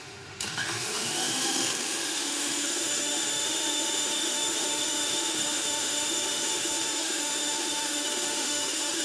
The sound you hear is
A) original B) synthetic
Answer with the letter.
B